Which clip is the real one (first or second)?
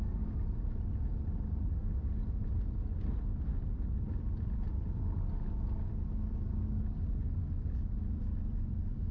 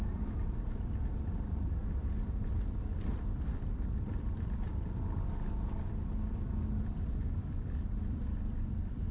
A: first